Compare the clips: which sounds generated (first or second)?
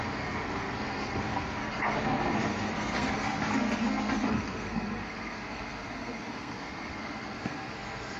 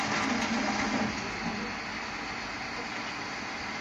first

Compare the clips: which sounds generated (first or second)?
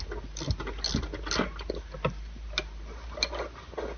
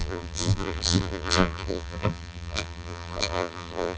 second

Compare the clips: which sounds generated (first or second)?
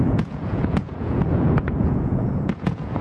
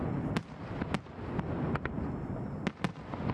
first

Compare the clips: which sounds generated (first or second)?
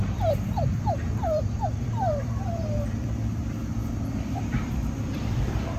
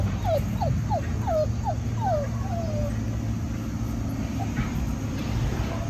first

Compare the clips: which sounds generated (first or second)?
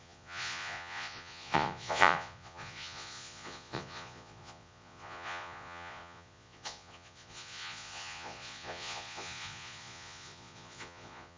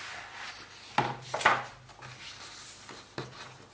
first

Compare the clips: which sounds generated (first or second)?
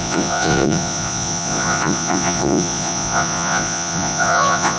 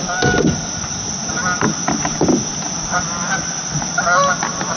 first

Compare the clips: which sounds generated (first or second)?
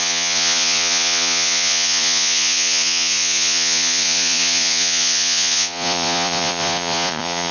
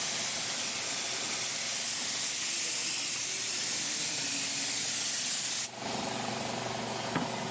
first